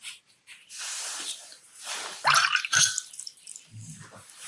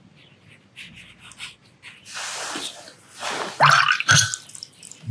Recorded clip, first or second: second